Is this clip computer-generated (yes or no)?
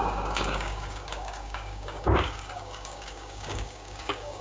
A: yes